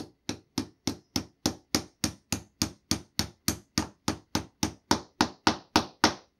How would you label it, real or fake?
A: real